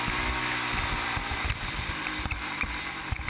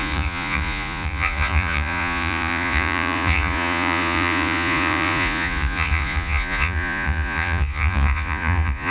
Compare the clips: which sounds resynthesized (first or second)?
second